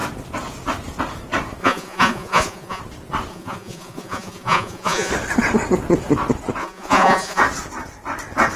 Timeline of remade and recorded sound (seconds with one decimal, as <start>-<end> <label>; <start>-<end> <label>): 0.0-1.6 recorded; 1.6-2.8 remade; 2.8-3.3 recorded; 3.3-5.1 remade; 5.1-6.6 recorded; 6.6-7.4 remade; 7.4-8.6 recorded